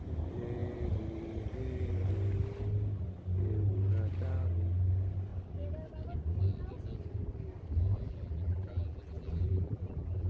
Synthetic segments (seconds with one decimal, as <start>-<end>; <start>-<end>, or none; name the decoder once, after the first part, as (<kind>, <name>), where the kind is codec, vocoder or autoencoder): 7.9-10.3 (vocoder, BigVGAN v2)